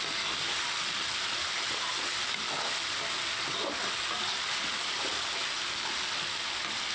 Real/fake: real